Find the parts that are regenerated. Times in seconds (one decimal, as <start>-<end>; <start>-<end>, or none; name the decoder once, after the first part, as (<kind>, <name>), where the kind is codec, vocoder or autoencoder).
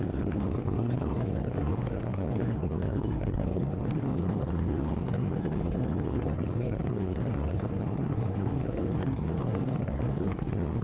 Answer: 0.0-10.8 (codec, SNAC)